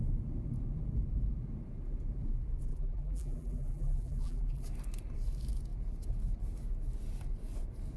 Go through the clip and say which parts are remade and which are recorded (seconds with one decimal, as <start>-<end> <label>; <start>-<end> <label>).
0.0-2.7 recorded; 2.7-4.6 remade; 4.6-8.0 recorded